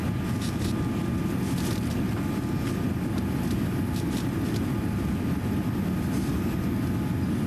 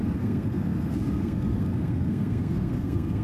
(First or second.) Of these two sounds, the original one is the first